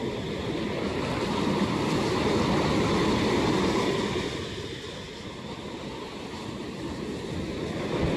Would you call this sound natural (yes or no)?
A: yes